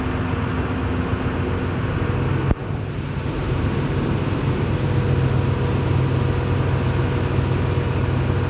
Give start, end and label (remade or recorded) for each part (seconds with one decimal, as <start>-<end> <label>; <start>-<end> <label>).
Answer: 0.0-2.6 recorded; 2.6-4.9 remade; 4.9-8.5 recorded